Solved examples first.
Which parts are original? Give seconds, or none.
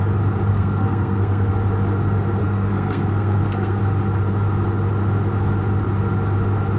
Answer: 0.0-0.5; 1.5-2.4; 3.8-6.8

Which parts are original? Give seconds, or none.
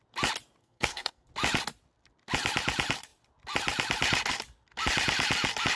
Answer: 0.0-0.6; 1.3-5.8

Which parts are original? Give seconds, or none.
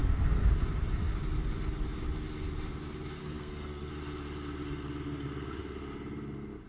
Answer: 0.0-3.2; 3.9-6.7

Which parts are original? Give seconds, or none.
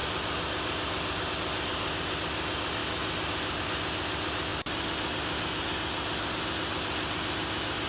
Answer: 0.0-7.9